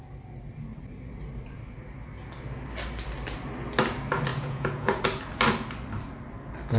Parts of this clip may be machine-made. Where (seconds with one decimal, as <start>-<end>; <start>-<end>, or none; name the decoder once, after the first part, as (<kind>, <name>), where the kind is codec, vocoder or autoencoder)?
4.3-5.0 (vocoder, Vocos)